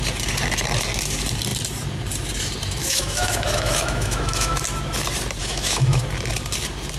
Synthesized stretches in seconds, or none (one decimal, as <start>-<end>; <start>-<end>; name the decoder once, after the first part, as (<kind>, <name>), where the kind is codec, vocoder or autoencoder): 2.8-4.6 (autoencoder, DAC-VAE); 5.4-6.0